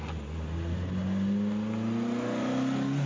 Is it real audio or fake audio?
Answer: real